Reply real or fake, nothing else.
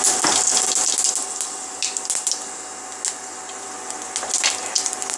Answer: real